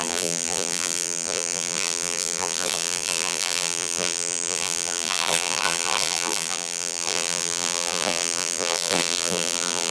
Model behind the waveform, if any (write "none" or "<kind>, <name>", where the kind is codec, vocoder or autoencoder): vocoder, BigVGAN v2